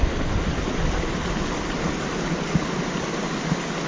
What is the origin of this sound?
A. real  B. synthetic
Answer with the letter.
A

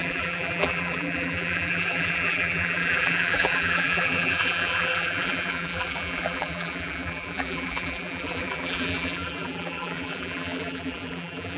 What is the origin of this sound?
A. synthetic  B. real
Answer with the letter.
A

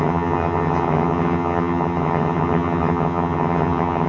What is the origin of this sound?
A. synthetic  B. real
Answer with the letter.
A